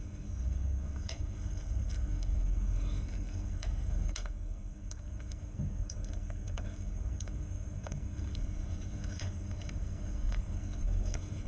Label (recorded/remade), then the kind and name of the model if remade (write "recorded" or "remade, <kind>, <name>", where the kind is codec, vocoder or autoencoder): remade, codec, SNAC